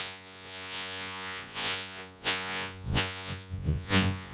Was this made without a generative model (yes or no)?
no